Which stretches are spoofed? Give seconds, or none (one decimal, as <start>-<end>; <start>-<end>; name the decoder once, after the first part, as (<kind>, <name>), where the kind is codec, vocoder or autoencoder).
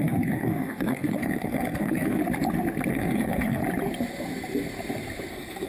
0.0-2.2 (codec, SNAC); 2.9-3.6; 5.3-5.7